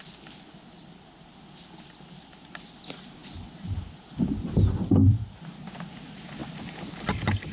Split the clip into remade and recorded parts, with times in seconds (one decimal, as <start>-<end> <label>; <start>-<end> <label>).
0.0-7.5 recorded